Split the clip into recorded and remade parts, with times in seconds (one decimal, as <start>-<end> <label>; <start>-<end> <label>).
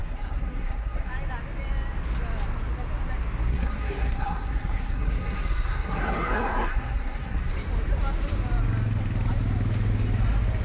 0.0-1.1 remade; 1.1-3.5 recorded; 3.5-7.5 remade; 7.5-10.6 recorded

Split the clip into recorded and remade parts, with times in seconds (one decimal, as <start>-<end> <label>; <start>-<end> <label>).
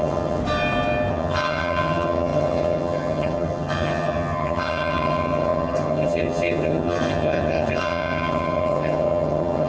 0.0-0.4 remade; 0.4-1.1 recorded; 1.1-9.7 remade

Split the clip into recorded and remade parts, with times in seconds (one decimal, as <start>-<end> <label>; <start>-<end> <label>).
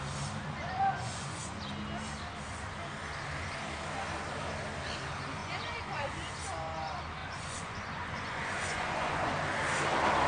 0.0-0.4 recorded; 0.4-1.6 remade; 1.6-5.4 recorded; 5.4-6.3 remade; 6.3-7.2 recorded; 7.2-9.3 remade; 9.3-10.3 recorded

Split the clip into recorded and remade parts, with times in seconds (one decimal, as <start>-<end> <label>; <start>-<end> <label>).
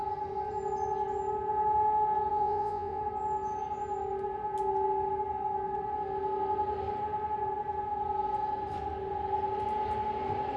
0.0-2.3 recorded; 2.3-3.0 remade; 3.0-10.6 recorded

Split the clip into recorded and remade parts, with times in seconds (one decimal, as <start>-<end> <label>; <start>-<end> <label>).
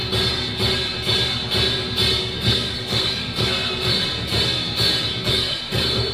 0.0-2.2 recorded; 2.2-4.0 remade; 4.0-5.3 recorded; 5.3-6.1 remade